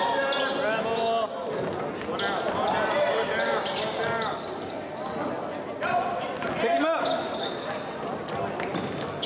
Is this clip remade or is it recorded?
recorded